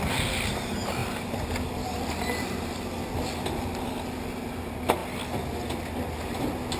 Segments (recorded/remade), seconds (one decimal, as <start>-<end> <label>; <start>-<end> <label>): 0.0-6.8 recorded